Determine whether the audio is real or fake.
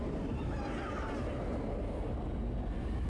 real